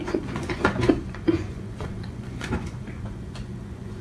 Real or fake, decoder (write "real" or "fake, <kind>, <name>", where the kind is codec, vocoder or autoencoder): fake, vocoder, Vocos